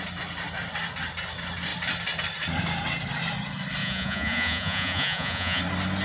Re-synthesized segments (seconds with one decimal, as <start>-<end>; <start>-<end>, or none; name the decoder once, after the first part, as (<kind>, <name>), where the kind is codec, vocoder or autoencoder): 3.8-5.6 (vocoder, Vocos)